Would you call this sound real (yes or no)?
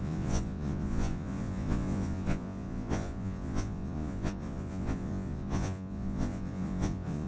no